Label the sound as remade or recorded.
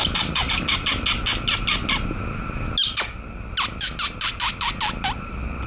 recorded